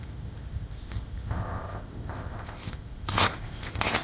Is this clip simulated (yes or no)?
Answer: yes